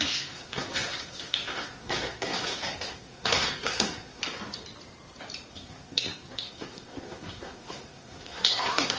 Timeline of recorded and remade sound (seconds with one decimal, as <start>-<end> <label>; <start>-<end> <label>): 0.0-4.2 remade; 4.2-5.5 recorded; 5.5-9.0 remade